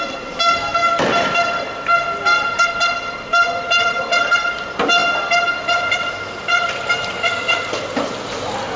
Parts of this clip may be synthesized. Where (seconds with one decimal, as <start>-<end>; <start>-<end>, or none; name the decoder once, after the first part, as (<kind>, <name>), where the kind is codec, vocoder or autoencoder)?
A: none